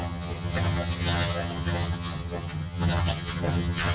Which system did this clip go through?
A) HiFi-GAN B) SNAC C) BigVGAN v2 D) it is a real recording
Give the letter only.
A